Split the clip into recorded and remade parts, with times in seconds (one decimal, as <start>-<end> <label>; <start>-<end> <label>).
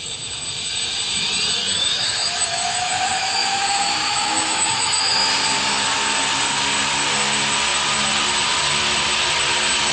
0.0-1.7 recorded; 1.7-5.3 remade; 5.3-9.9 recorded